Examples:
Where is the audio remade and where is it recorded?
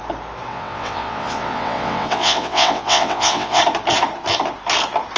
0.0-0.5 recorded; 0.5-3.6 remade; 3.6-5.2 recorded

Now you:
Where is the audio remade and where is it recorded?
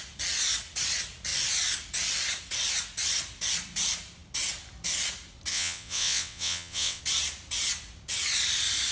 0.0-5.5 recorded; 5.5-7.0 remade; 7.0-8.9 recorded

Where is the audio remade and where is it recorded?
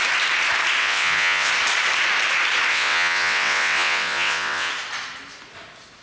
0.0-0.8 recorded; 0.8-1.5 remade; 1.5-2.7 recorded; 2.7-4.7 remade; 4.7-6.0 recorded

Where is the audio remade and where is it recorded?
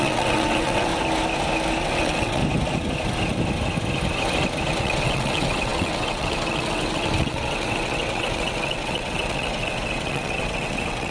0.0-0.9 remade; 0.9-1.8 recorded; 1.8-2.4 remade; 2.4-4.8 recorded; 4.8-11.1 remade